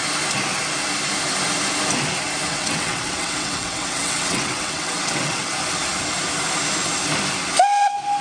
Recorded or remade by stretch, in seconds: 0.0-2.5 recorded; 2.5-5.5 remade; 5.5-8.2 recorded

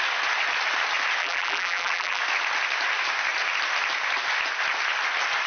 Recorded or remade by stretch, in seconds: 0.0-1.2 recorded; 1.2-2.2 remade; 2.2-5.5 recorded

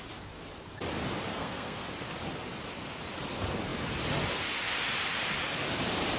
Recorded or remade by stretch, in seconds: 0.0-1.3 recorded; 1.3-1.9 remade; 1.9-6.2 recorded

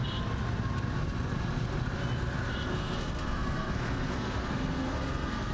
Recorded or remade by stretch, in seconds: 0.0-2.7 recorded; 2.7-5.5 remade

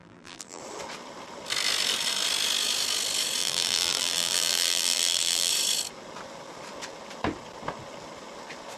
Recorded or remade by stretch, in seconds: 0.0-0.6 remade; 0.6-3.4 recorded; 3.4-5.5 remade; 5.5-8.8 recorded